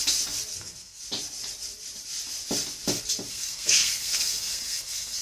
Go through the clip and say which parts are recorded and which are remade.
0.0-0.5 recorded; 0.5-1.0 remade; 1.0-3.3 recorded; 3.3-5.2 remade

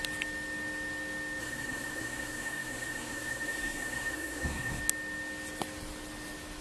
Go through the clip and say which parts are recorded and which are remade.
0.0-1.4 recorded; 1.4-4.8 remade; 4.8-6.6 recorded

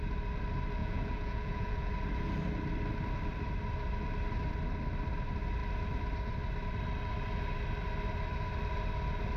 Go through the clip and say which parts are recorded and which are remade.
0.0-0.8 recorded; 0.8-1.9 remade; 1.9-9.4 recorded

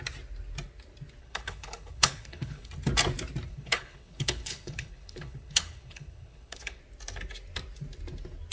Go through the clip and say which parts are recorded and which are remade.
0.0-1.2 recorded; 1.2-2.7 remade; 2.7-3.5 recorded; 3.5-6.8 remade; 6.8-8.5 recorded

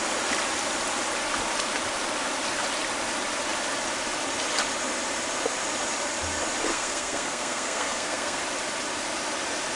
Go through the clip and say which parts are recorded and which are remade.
0.0-6.7 recorded; 6.7-8.4 remade; 8.4-9.8 recorded

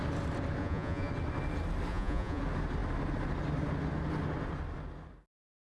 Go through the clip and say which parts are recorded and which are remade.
0.0-0.6 recorded; 0.6-1.1 remade; 1.1-1.9 recorded; 1.9-2.4 remade; 2.4-5.7 recorded

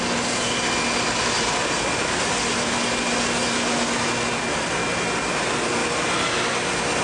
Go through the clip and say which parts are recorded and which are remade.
0.0-7.0 recorded

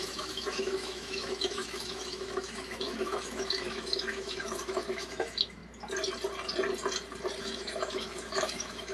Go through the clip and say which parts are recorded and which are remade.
0.0-5.6 remade; 5.6-7.4 recorded; 7.4-8.9 remade